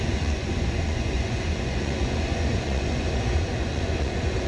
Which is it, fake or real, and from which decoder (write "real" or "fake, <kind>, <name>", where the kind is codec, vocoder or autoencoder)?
fake, vocoder, Vocos